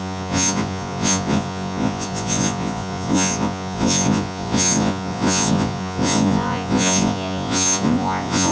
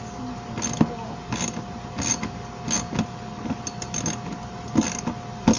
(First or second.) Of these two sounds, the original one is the second